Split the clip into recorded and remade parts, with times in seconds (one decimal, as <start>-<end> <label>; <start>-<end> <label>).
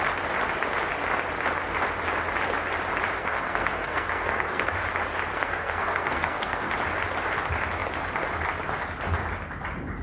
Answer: 0.0-3.2 recorded; 3.2-4.7 remade; 4.7-5.3 recorded; 5.3-6.7 remade; 6.7-10.0 recorded